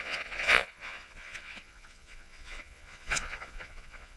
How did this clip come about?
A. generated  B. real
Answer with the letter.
A